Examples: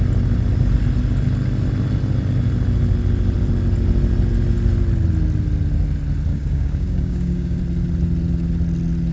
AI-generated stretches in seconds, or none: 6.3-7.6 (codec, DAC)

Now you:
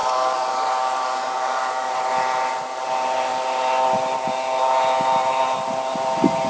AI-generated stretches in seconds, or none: 0.0-1.9 (codec, DAC)

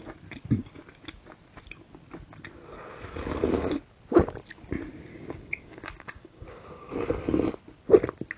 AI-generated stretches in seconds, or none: 5.1-7.2 (codec, DAC)

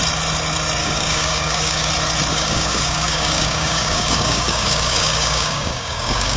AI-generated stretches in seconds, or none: 0.8-1.9 (codec, DAC); 2.3-6.4